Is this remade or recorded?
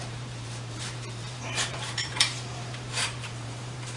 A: remade